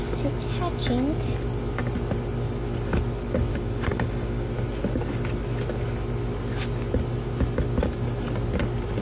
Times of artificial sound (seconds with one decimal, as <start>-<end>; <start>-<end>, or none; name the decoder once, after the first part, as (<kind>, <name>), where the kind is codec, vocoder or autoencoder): 3.5-4.5 (codec, DAC)